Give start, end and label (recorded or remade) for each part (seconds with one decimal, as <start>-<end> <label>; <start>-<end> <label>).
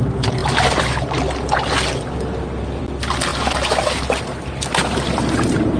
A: 0.0-5.8 recorded